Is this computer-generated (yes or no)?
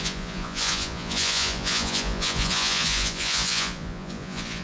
yes